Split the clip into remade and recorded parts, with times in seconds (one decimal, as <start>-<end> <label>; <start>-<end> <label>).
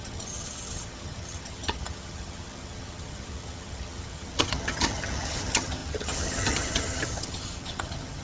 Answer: 0.0-8.2 remade